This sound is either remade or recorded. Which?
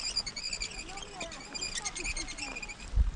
recorded